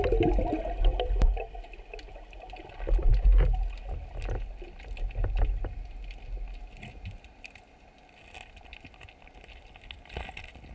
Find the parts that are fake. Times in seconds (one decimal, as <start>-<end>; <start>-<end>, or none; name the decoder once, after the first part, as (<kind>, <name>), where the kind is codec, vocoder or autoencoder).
none